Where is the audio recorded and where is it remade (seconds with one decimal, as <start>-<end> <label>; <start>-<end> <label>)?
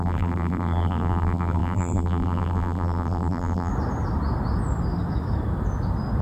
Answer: 0.0-3.7 remade; 3.7-6.2 recorded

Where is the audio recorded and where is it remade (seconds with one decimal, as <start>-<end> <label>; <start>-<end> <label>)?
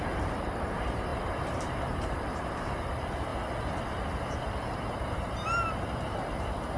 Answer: 0.0-3.3 remade; 3.3-4.3 recorded; 4.3-6.8 remade